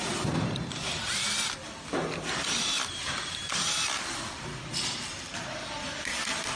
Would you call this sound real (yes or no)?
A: no